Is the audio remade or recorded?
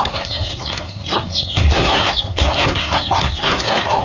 remade